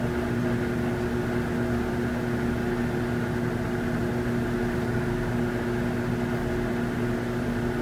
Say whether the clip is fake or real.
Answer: real